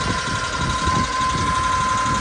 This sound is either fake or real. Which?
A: real